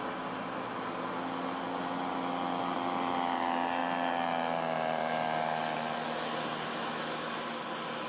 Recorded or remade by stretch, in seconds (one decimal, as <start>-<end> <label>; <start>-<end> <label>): 0.0-8.1 recorded